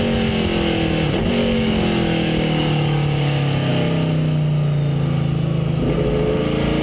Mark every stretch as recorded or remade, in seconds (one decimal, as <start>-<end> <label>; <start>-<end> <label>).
0.0-1.4 recorded; 1.4-3.7 remade; 3.7-6.8 recorded